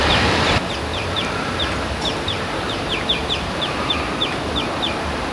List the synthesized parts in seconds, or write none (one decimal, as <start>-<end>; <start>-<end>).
0.9-4.1